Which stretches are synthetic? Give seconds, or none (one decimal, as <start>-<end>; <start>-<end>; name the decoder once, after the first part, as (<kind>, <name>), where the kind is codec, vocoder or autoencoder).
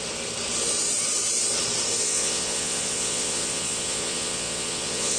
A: 2.0-5.2 (vocoder, Vocos)